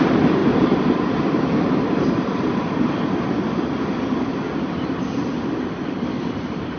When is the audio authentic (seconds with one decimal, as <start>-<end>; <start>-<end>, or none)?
0.0-6.8

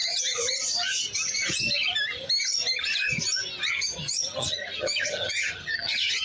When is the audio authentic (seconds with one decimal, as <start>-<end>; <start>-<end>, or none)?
0.0-3.7